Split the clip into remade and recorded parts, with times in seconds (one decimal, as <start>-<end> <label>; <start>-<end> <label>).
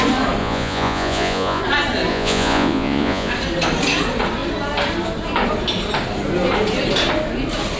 0.0-0.4 recorded; 0.4-1.6 remade; 1.6-2.1 recorded; 2.1-3.3 remade; 3.3-7.8 recorded